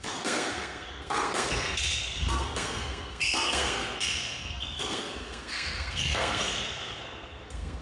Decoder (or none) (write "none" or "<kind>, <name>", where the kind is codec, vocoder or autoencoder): codec, SNAC